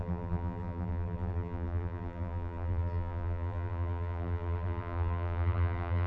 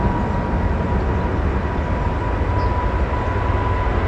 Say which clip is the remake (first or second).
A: first